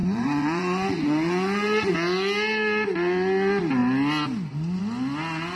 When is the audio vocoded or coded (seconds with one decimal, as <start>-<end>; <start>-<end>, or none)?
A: 0.0-1.9